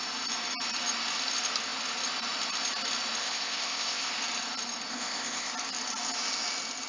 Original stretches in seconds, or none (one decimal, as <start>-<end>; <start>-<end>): 0.0-3.2; 4.1-4.9; 5.5-6.9